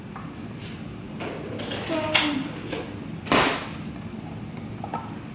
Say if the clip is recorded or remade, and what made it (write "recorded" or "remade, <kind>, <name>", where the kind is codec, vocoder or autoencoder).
recorded